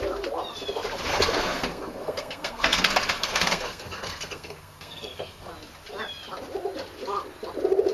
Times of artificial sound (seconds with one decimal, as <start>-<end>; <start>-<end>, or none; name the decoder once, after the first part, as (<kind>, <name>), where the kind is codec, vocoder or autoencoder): 1.1-5.5 (codec, SNAC)